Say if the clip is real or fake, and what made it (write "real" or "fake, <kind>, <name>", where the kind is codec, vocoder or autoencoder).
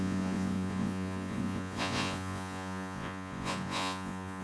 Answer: fake, vocoder, Vocos